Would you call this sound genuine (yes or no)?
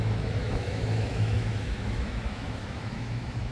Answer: no